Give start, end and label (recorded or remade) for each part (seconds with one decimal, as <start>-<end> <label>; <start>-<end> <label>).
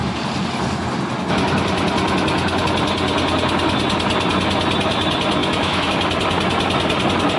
0.0-5.4 recorded; 5.4-5.9 remade; 5.9-7.4 recorded